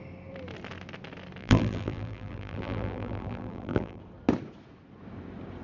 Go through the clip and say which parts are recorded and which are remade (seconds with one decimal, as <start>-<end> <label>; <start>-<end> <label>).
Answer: 0.0-1.4 recorded; 1.4-4.0 remade; 4.0-5.6 recorded